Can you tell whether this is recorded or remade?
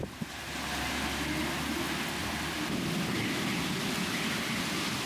recorded